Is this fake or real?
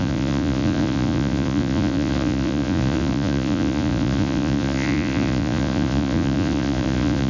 fake